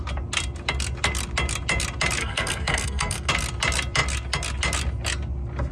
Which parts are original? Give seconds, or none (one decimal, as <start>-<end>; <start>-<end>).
0.0-2.2; 3.3-5.7